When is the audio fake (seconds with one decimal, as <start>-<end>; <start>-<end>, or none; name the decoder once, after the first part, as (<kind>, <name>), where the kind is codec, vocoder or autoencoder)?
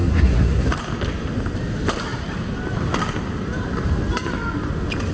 0.0-0.7 (codec, SNAC)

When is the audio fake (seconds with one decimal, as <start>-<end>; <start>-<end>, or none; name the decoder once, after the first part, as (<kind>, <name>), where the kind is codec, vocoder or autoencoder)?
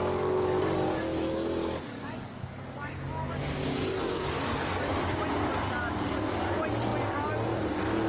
0.0-4.9 (codec, DAC)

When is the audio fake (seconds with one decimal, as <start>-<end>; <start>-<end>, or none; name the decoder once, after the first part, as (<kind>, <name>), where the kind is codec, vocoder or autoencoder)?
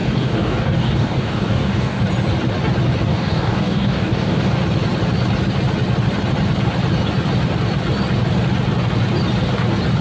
0.0-2.0 (codec, DAC); 3.1-4.6